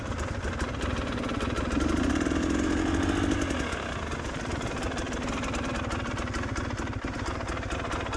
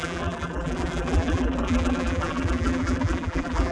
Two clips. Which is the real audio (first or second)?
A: first